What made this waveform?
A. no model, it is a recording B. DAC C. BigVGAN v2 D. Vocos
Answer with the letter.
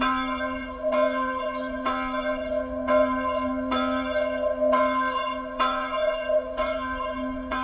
D